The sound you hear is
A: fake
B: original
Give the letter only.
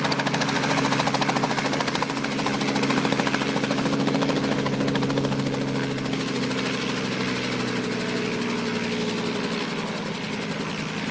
B